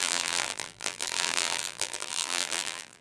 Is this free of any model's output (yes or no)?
no